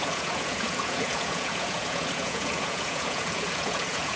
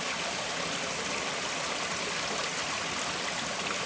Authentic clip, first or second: second